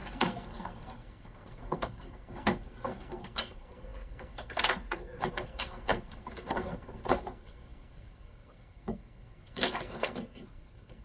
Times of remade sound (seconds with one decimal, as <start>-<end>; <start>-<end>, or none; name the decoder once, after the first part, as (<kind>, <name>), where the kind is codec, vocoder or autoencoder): 0.0-11.0 (codec, SNAC)